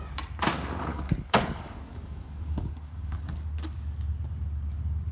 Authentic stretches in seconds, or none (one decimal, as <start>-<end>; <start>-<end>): 0.0-0.9; 3.2-5.1